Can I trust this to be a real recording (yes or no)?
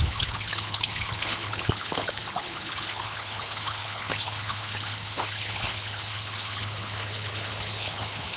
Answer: no